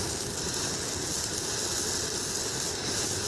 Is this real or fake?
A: real